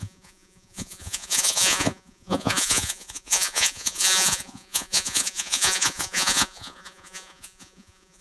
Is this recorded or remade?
remade